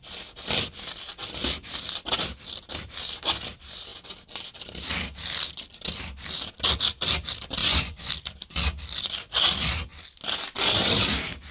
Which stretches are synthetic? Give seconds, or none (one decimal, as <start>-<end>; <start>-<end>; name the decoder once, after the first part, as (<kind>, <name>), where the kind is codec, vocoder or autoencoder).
7.6-8.1 (vocoder, Vocos)